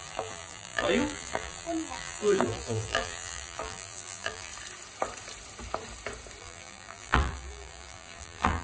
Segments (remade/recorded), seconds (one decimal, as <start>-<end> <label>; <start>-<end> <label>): 0.0-4.5 remade; 4.5-6.4 recorded; 6.4-8.6 remade